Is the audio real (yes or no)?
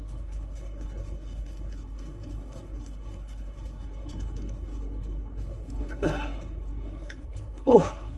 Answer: no